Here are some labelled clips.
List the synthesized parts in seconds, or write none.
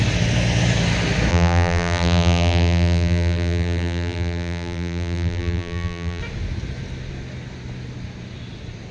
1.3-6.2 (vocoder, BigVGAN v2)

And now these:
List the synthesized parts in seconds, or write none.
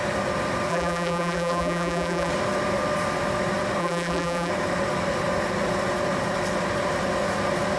0.7-2.3 (vocoder, BigVGAN v2); 3.8-4.5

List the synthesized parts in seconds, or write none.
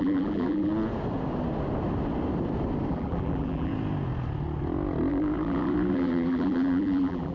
0.0-0.7 (vocoder, BigVGAN v2); 2.9-3.7; 5.1-7.3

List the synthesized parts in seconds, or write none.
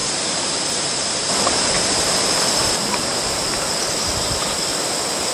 0.0-2.1 (vocoder, BigVGAN v2); 2.6-4.1; 4.7-5.3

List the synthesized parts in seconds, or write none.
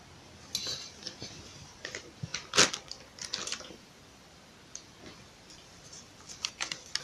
2.3-6.5 (vocoder, BigVGAN v2)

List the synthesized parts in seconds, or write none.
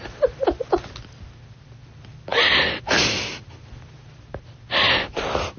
none